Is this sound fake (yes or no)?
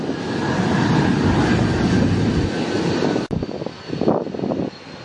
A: no